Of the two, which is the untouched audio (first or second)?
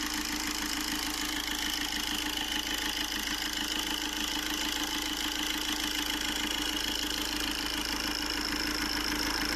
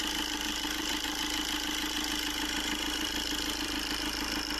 first